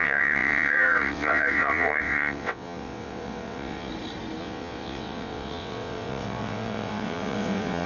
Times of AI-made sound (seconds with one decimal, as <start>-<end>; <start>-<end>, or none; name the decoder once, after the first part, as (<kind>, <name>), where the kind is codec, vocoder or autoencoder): 0.0-3.9 (vocoder, WaveNeXt); 4.4-7.9